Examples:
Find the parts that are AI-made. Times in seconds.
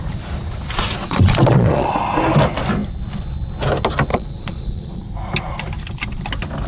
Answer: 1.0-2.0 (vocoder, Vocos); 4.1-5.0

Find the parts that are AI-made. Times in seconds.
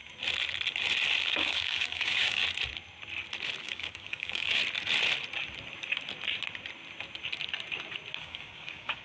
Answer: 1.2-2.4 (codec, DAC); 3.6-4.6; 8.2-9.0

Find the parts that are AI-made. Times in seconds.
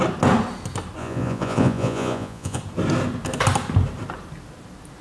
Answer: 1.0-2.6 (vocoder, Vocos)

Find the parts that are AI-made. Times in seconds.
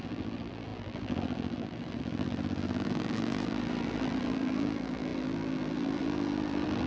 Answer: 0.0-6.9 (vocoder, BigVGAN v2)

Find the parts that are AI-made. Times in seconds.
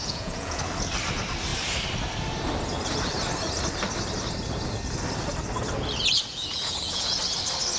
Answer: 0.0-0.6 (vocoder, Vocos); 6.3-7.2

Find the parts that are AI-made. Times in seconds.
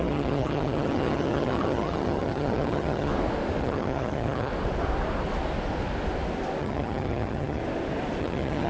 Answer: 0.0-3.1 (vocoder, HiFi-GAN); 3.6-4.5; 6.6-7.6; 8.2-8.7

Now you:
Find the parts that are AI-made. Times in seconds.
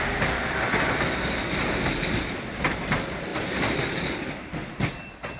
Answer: none